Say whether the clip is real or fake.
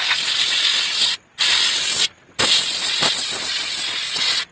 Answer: real